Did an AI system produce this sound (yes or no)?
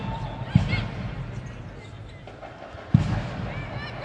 no